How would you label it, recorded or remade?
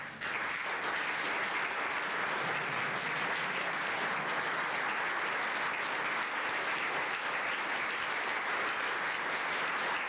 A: recorded